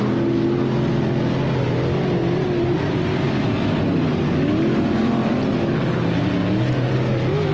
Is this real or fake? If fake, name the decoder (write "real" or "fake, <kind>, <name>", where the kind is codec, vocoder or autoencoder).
real